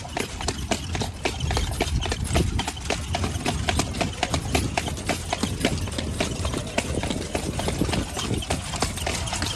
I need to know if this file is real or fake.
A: real